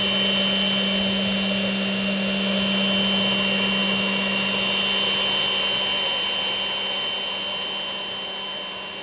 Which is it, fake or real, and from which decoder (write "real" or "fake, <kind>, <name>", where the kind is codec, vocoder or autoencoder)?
real